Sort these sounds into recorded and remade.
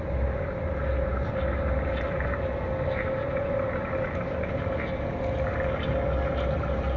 recorded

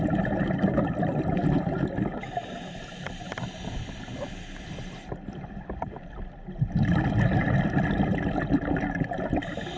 recorded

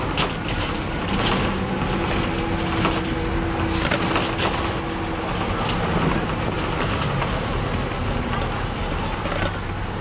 recorded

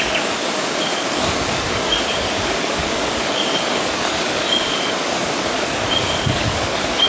remade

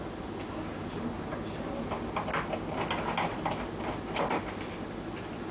recorded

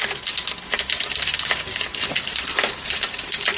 recorded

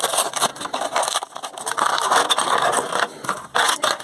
recorded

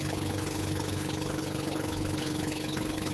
remade